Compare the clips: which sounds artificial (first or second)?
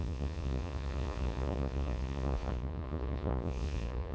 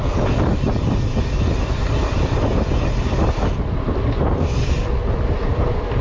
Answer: first